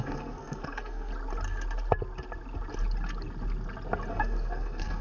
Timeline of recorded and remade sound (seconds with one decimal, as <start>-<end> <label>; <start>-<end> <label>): 0.0-1.1 remade; 1.1-4.1 recorded; 4.1-5.0 remade